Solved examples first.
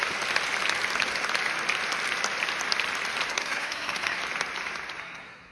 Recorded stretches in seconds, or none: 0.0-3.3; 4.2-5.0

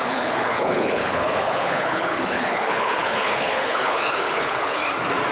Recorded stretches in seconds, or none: 4.8-5.3

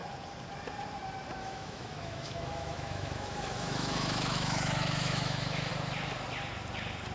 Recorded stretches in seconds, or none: 0.0-1.4; 5.7-7.1

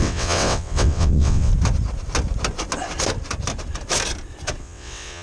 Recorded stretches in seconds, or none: 1.5-4.6

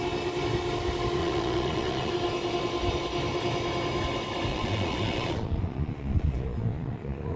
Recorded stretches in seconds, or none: 0.0-1.2; 2.1-4.5

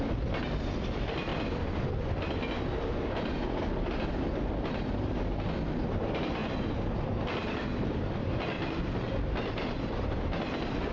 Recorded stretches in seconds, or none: 0.0-10.9

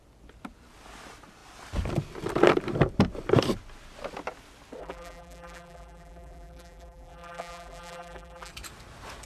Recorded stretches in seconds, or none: 0.0-4.8; 8.5-9.3